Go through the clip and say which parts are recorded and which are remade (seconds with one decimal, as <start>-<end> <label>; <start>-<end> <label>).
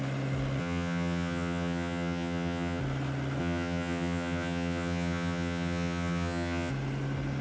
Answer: 0.0-0.6 recorded; 0.6-2.8 remade; 2.8-3.4 recorded; 3.4-6.7 remade; 6.7-7.4 recorded